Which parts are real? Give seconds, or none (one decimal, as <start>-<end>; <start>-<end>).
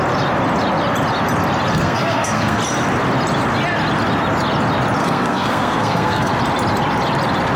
0.0-1.7; 2.6-5.0; 6.3-7.6